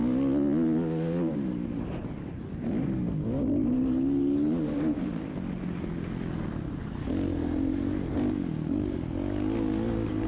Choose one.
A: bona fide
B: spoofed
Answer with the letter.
A